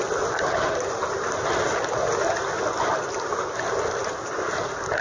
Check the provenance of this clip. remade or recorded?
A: recorded